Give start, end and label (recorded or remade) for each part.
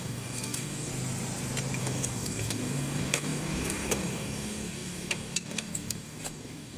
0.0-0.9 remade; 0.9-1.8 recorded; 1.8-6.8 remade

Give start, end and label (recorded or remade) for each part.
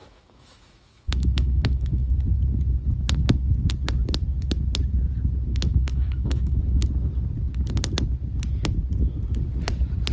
0.0-2.1 remade; 2.1-5.5 recorded; 5.5-6.6 remade; 6.6-10.1 recorded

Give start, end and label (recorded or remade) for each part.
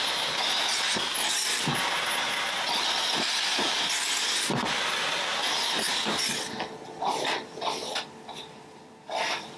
0.0-9.6 recorded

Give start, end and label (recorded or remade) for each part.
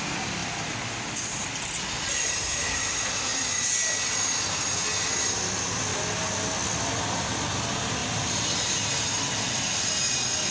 0.0-0.4 recorded; 0.4-1.6 remade; 1.6-8.0 recorded; 8.0-8.7 remade; 8.7-10.5 recorded